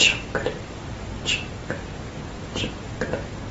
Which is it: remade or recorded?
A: recorded